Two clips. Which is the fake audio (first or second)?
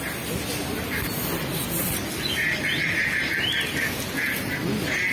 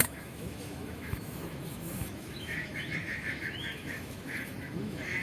second